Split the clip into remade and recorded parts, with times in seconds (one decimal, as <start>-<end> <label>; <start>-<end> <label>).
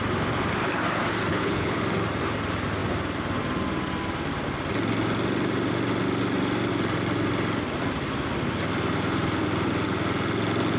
0.0-1.3 recorded; 1.3-1.8 remade; 1.8-10.8 recorded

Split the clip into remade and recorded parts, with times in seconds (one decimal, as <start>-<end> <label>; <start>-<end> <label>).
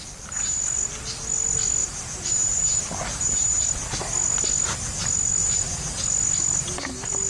0.0-0.6 remade; 0.6-1.8 recorded; 1.8-3.6 remade; 3.6-5.4 recorded; 5.4-6.0 remade; 6.0-7.3 recorded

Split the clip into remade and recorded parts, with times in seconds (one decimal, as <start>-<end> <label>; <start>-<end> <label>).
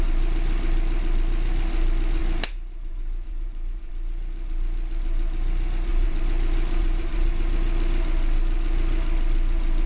0.0-2.2 recorded; 2.2-3.9 remade; 3.9-5.9 recorded; 5.9-7.4 remade; 7.4-9.9 recorded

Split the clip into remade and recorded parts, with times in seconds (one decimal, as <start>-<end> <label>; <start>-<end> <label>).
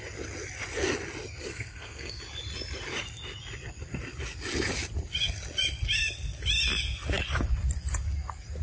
0.0-1.5 recorded; 1.5-2.2 remade; 2.2-8.6 recorded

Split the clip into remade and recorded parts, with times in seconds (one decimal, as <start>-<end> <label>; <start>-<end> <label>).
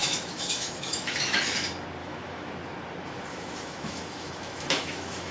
0.0-1.4 remade; 1.4-2.0 recorded; 2.0-2.5 remade; 2.5-3.3 recorded; 3.3-5.3 remade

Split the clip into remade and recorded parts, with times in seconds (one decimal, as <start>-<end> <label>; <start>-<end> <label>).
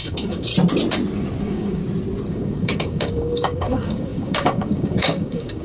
0.0-0.5 remade; 0.5-1.4 recorded; 1.4-1.8 remade; 1.8-2.3 recorded; 2.3-5.6 remade